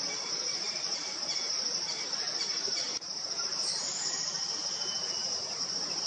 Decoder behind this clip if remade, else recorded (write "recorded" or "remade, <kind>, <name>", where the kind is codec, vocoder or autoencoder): remade, vocoder, BigVGAN v2